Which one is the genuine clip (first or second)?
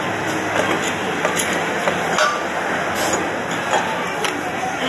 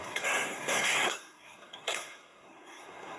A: first